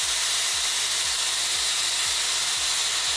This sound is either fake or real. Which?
real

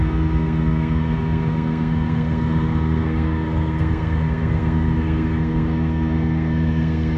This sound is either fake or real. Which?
fake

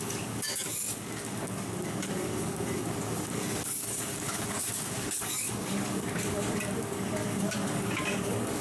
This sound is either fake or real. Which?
fake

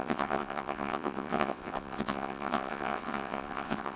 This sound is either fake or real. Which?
fake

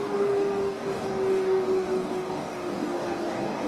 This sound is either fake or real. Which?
fake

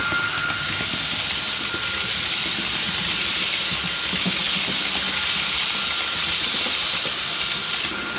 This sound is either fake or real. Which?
real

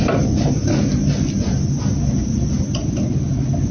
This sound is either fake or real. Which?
real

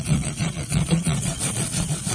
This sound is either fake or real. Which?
fake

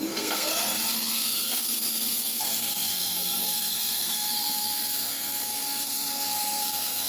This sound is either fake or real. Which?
fake